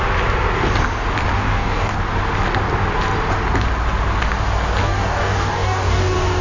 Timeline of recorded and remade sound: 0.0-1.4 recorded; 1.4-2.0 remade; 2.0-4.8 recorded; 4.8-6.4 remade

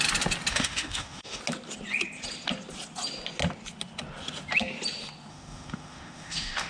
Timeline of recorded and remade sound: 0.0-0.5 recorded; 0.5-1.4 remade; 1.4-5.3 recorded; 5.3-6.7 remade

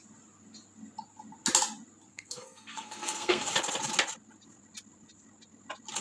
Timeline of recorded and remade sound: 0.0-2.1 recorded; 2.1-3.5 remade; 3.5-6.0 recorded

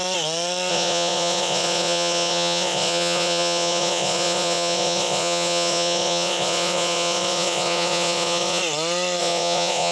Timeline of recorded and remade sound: 0.0-0.7 recorded; 0.7-8.6 remade; 8.6-9.2 recorded; 9.2-9.9 remade

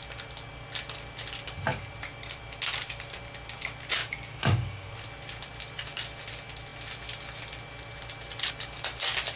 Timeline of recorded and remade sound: 0.0-4.0 recorded; 4.0-4.9 remade; 4.9-9.4 recorded

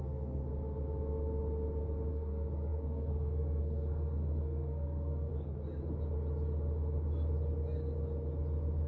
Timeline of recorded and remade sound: 0.0-0.4 remade; 0.4-2.1 recorded; 2.1-5.3 remade; 5.3-8.9 recorded

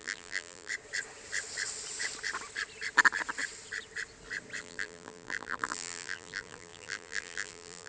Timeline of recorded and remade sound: 0.0-0.7 remade; 0.7-4.6 recorded; 4.6-7.9 remade

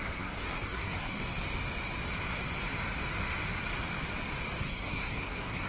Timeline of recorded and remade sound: 0.0-1.2 remade; 1.2-4.6 recorded; 4.6-5.7 remade